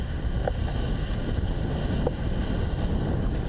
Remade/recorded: recorded